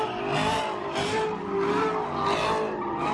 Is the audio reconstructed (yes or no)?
no